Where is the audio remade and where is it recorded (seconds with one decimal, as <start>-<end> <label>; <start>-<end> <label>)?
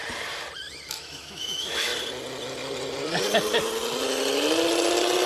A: 0.0-0.9 recorded; 0.9-1.9 remade; 1.9-5.3 recorded